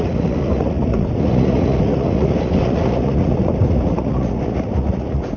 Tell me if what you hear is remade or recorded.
remade